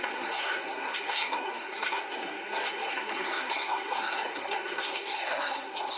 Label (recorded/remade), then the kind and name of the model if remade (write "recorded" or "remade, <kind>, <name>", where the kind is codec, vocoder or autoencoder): remade, codec, SNAC